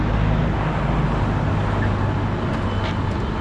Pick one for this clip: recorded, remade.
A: recorded